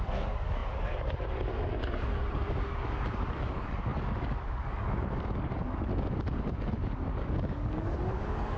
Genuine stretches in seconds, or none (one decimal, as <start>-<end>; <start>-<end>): none